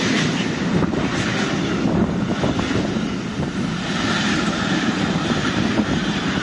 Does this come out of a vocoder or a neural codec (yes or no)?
no